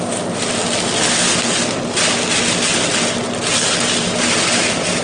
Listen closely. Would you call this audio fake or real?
real